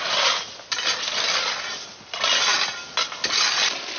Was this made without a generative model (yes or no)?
yes